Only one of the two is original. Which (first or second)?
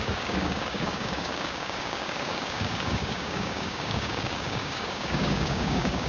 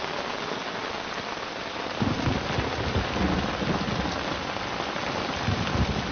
second